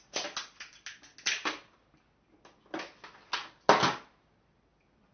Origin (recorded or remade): recorded